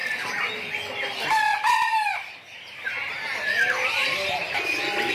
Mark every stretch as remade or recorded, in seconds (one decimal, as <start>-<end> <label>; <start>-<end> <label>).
0.0-1.4 remade; 1.4-1.9 recorded; 1.9-3.1 remade; 3.1-4.0 recorded; 4.0-5.1 remade